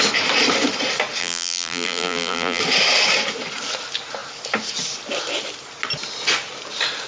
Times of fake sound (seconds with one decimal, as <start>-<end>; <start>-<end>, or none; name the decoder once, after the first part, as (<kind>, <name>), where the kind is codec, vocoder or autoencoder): 1.2-2.6 (vocoder, BigVGAN v2)